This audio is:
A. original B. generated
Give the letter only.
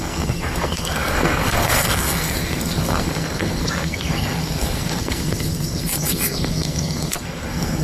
B